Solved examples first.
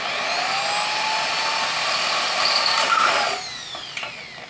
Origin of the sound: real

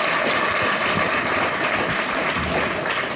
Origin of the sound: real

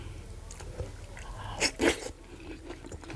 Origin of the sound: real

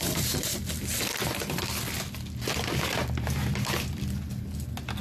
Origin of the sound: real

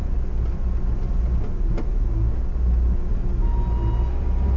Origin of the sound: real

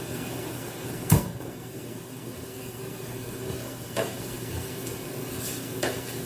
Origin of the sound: fake